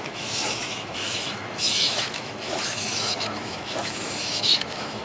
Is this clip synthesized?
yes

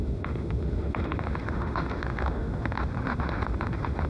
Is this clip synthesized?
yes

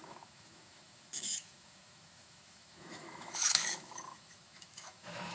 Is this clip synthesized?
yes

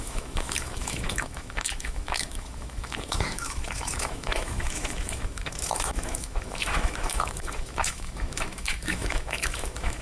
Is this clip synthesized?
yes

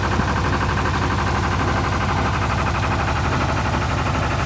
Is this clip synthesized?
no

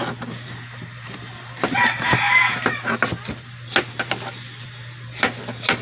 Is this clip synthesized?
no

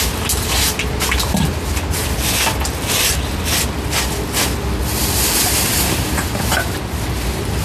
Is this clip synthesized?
no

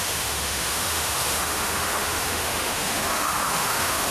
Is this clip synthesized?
yes